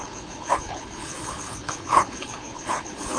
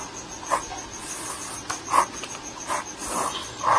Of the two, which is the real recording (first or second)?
second